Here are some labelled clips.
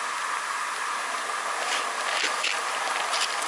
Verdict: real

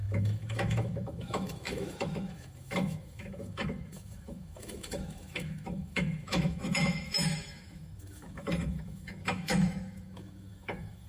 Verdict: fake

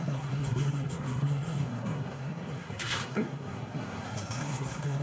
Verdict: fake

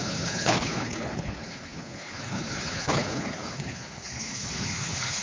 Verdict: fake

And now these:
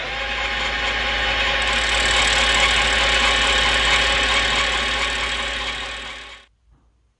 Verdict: real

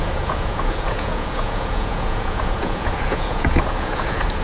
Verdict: fake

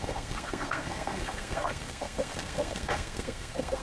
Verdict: fake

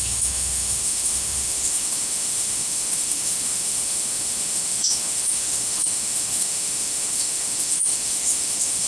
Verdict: fake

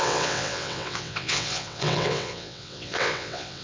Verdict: fake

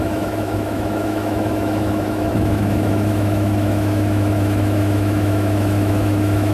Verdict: fake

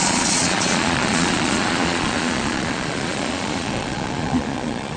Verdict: fake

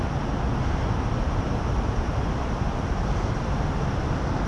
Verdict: real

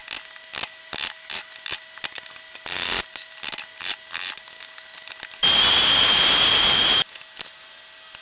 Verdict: real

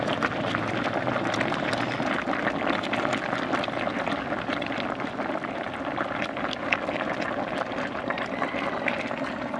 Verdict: real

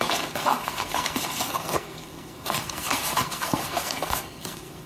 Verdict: fake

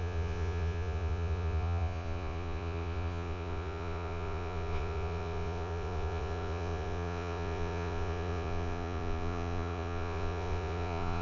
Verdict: fake